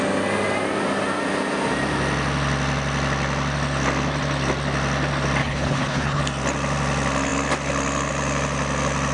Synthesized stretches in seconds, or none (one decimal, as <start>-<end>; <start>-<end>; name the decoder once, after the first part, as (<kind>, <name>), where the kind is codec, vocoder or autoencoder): 5.4-6.2 (codec, HILCodec)